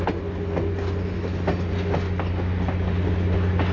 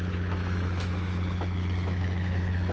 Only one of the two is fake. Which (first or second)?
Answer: second